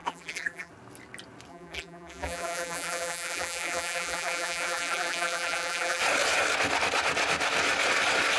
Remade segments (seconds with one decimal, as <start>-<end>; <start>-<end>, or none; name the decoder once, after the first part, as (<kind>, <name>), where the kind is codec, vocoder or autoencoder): 0.0-0.7 (vocoder, BigVGAN v2); 1.5-6.0